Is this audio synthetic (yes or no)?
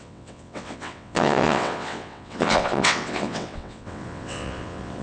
yes